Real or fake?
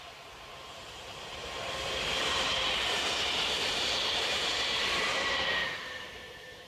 fake